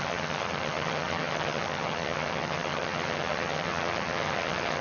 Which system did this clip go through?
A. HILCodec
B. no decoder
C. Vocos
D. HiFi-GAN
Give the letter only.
D